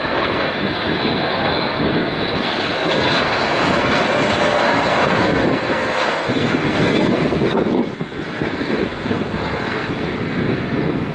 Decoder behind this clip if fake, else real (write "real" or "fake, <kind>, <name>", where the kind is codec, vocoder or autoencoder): fake, codec, SNAC